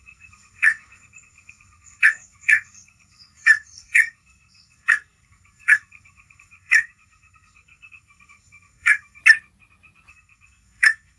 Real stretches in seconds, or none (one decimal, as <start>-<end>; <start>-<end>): 9.2-10.1